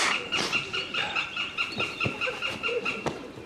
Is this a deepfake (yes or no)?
yes